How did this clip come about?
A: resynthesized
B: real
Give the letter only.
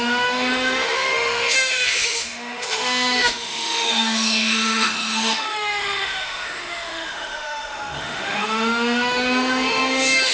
A